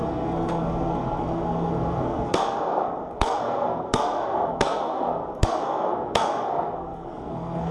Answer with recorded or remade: remade